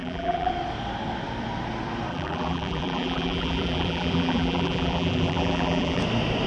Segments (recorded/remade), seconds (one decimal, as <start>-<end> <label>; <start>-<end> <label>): 0.0-0.5 remade; 0.5-2.1 recorded; 2.1-6.0 remade; 6.0-6.5 recorded